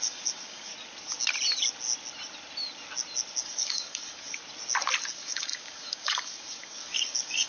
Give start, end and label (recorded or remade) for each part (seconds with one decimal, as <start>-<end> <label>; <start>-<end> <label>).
0.0-0.7 remade; 0.7-3.4 recorded; 3.4-4.4 remade; 4.4-5.1 recorded; 5.1-7.5 remade